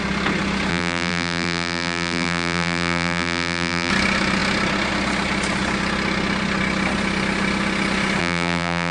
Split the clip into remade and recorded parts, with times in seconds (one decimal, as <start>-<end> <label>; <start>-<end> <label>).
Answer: 0.0-0.7 recorded; 0.7-3.9 remade; 3.9-8.2 recorded; 8.2-8.9 remade